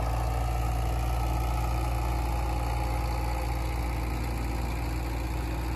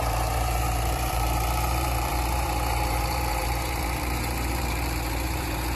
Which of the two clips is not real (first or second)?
second